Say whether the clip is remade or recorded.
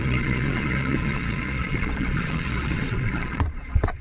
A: remade